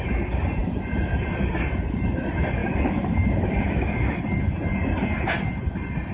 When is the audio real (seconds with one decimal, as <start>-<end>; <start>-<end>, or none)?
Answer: 0.0-2.6; 4.2-6.1